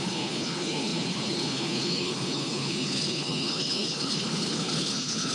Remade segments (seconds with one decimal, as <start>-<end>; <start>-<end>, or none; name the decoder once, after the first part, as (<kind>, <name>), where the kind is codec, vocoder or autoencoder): 0.0-5.3 (codec, HILCodec)